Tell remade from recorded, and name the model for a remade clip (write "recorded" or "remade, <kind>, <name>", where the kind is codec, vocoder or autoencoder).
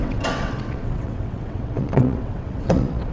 remade, vocoder, WaveNeXt